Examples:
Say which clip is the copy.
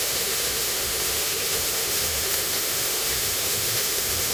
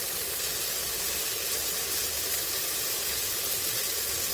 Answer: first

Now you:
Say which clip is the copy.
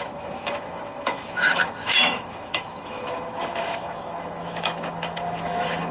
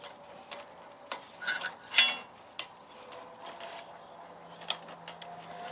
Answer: first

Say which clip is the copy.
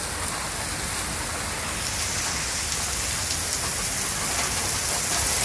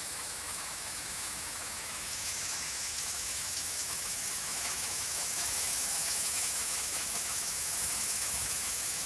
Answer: second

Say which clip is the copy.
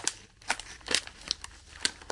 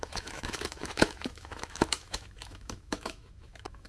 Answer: second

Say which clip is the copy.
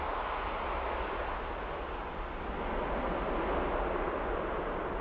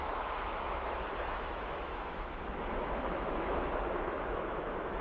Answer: second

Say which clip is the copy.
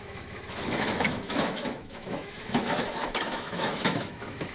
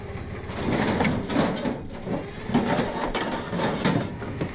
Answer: first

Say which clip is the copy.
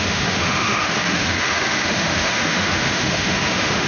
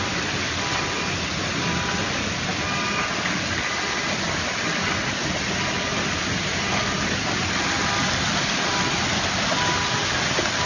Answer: first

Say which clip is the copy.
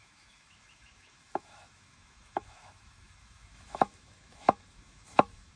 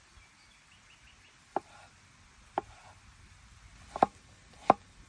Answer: first